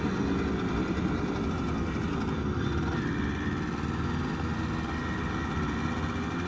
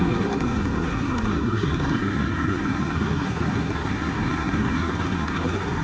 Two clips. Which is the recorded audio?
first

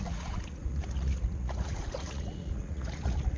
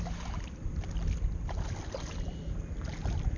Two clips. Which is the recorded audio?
second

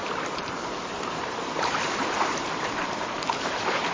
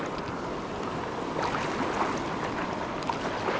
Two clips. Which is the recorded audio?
second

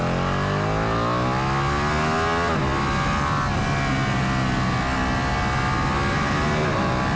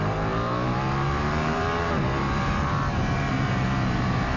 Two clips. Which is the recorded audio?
first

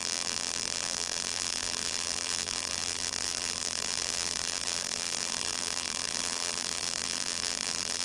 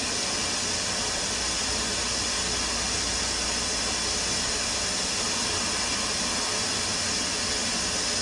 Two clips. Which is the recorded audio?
second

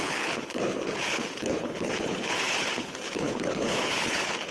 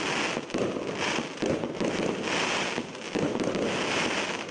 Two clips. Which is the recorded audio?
second